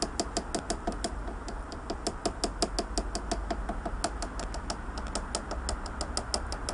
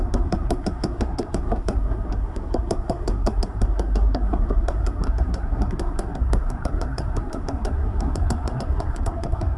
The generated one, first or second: second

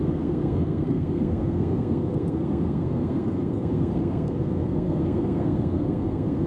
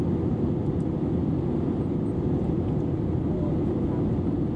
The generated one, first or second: first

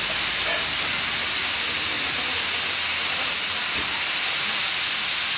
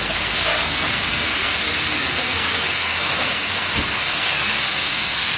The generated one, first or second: second